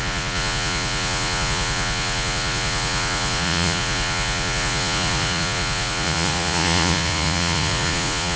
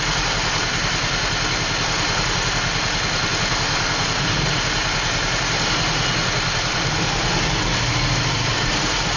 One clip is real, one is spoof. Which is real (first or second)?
second